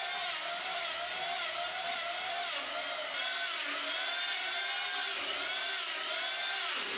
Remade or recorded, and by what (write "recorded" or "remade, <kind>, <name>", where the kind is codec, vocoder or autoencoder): recorded